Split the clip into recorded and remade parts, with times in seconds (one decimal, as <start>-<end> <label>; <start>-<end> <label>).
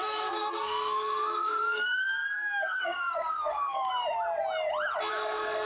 0.0-3.9 remade; 3.9-5.1 recorded; 5.1-5.7 remade